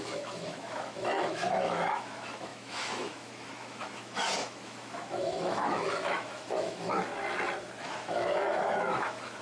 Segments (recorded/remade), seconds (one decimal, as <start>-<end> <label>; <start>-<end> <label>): 0.0-7.1 remade; 7.1-7.8 recorded; 7.8-9.4 remade